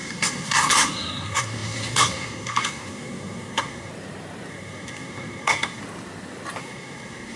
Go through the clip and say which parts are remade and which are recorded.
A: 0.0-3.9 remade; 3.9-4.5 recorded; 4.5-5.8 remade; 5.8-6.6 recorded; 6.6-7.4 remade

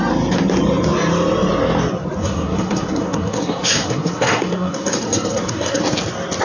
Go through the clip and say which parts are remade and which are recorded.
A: 0.0-2.2 recorded; 2.2-5.8 remade; 5.8-6.4 recorded

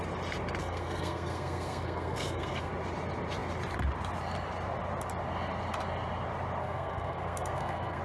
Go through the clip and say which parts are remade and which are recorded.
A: 0.0-0.6 recorded; 0.6-2.7 remade; 2.7-6.6 recorded; 6.6-8.0 remade